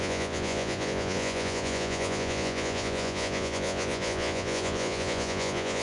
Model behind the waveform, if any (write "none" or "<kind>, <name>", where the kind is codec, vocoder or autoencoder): vocoder, Vocos